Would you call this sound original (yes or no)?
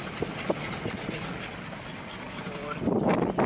yes